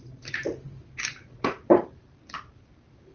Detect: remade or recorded remade